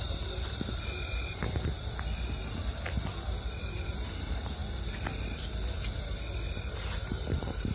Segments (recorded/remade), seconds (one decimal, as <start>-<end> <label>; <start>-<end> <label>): 0.0-1.4 remade; 1.4-3.6 recorded; 3.6-4.6 remade; 4.6-6.7 recorded; 6.7-7.7 remade